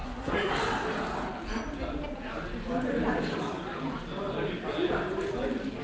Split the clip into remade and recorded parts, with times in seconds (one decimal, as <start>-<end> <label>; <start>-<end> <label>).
0.0-0.5 remade; 0.5-5.8 recorded